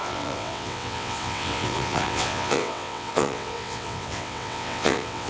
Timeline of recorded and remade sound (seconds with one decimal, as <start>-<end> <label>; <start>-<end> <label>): 0.0-5.3 remade